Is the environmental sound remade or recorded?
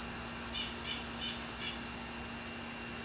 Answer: recorded